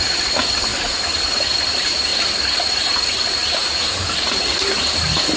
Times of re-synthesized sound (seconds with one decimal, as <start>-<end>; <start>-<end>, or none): 0.0-0.7; 1.7-2.1; 2.7-5.4